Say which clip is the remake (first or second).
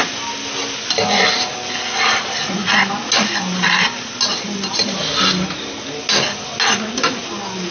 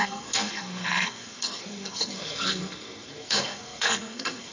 second